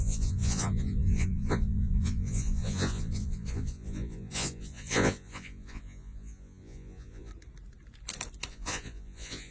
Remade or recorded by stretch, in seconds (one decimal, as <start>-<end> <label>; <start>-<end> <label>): 0.0-7.3 remade; 7.3-8.5 recorded; 8.5-9.5 remade